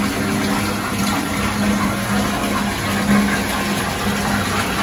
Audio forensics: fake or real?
real